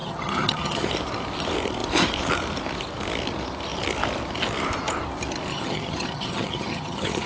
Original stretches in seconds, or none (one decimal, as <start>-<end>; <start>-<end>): 0.9-5.5